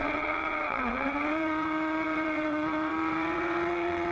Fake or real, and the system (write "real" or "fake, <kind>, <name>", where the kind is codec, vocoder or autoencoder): fake, vocoder, WaveNeXt